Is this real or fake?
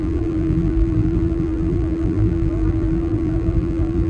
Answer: fake